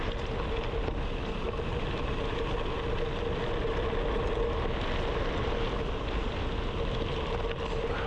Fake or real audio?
real